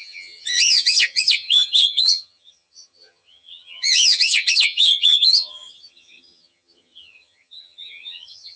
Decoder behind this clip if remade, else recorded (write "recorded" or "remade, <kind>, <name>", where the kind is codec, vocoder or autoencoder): remade, vocoder, HiFi-GAN